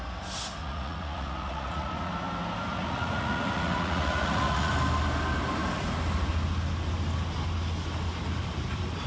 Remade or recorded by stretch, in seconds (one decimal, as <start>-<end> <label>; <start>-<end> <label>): 0.0-0.6 recorded; 0.6-2.1 remade; 2.1-2.7 recorded; 2.7-4.7 remade; 4.7-9.1 recorded